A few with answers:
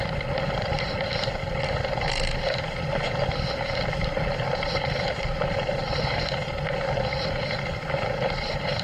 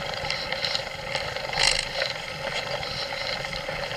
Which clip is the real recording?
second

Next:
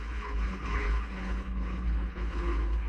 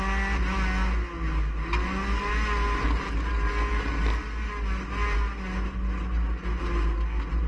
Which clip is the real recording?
second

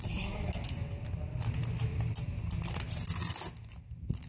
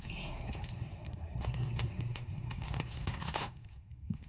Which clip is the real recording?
first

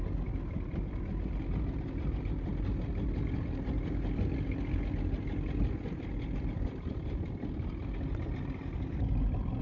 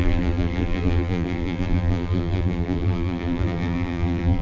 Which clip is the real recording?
first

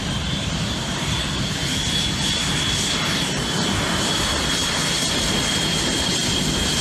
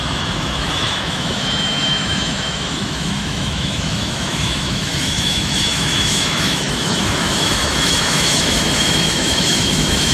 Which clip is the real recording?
first